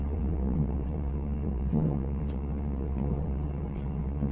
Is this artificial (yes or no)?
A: yes